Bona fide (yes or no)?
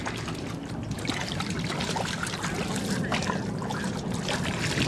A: yes